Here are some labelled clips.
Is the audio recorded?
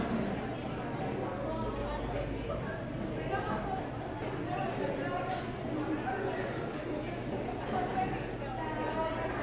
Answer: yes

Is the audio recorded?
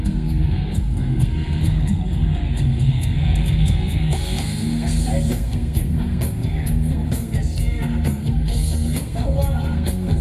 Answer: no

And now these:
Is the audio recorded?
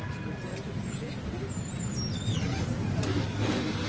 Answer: yes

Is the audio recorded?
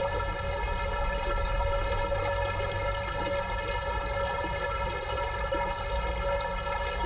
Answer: yes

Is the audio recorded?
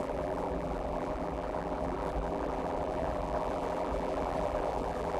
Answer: no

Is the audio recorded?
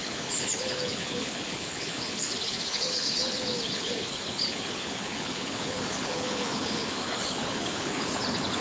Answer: no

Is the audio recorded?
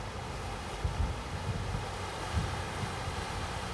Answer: yes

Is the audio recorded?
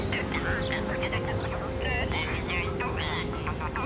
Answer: yes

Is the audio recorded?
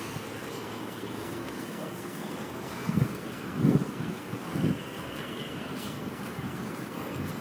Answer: no